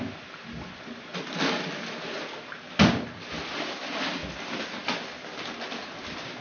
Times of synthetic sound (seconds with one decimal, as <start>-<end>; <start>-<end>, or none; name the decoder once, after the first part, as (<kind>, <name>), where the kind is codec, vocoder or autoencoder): none